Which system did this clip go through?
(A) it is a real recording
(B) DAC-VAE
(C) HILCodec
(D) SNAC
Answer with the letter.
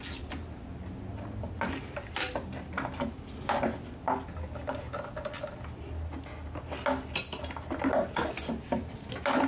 A